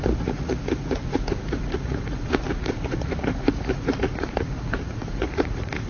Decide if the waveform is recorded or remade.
remade